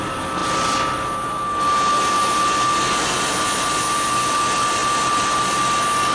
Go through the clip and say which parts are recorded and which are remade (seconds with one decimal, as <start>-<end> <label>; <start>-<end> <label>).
0.0-6.1 recorded